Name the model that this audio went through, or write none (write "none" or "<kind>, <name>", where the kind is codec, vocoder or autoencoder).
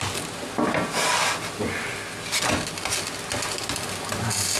none